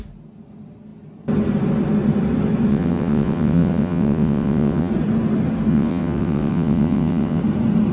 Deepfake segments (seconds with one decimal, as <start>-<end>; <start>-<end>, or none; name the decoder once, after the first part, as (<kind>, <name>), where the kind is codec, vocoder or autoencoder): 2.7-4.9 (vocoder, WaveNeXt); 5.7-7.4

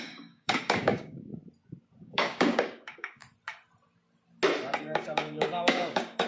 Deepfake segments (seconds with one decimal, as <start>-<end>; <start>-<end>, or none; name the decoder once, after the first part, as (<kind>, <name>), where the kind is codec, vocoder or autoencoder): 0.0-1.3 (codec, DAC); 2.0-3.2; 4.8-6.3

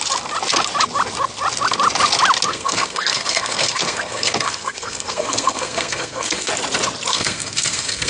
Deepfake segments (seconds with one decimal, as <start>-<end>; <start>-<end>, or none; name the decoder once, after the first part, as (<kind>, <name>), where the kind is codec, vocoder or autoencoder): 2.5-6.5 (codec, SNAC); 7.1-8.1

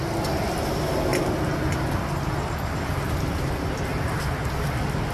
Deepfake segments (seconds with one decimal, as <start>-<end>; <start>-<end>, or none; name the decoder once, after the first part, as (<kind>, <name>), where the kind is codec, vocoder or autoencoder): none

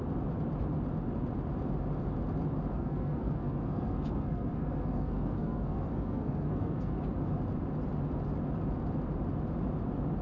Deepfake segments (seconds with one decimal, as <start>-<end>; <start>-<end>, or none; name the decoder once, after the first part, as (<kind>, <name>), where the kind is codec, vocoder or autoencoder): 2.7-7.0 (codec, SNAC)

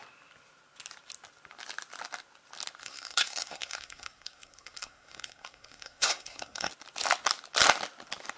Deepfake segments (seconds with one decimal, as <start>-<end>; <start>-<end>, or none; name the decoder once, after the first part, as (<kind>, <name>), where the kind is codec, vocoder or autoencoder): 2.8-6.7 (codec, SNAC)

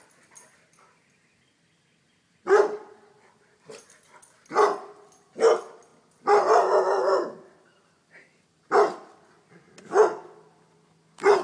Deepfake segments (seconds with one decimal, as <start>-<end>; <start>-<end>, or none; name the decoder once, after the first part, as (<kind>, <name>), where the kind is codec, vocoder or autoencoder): none